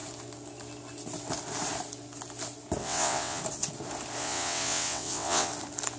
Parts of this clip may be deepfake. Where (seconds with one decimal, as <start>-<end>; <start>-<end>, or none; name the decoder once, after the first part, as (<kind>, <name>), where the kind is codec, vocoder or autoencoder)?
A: 2.8-3.4 (vocoder, WaveNeXt); 4.2-5.5